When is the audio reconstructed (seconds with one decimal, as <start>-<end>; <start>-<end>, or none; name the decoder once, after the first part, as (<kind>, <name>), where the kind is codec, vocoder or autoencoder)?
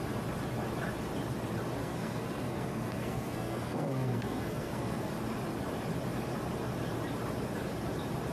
1.8-5.1 (codec, SNAC)